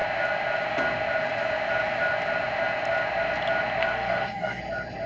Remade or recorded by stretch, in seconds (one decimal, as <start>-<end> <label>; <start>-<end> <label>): 0.0-3.8 recorded; 3.8-4.6 remade; 4.6-5.1 recorded